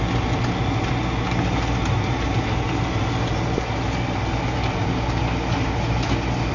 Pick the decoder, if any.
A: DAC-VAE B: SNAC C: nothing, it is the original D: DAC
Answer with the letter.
C